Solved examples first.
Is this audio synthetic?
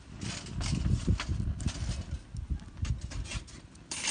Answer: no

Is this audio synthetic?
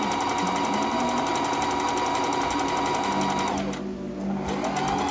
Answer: no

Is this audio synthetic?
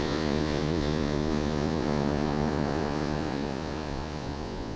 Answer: yes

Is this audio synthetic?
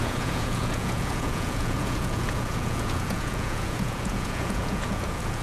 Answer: yes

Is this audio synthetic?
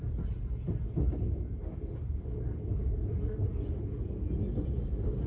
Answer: no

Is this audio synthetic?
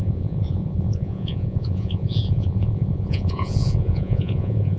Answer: yes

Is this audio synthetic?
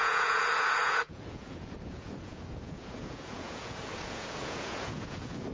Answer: yes